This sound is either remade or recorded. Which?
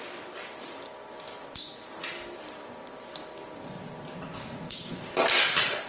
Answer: remade